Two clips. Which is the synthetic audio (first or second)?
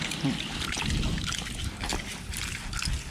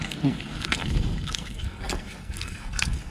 second